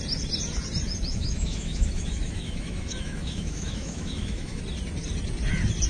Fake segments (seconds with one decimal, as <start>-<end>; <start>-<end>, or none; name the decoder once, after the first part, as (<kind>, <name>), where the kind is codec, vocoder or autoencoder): 1.1-4.6 (autoencoder, DAC-VAE)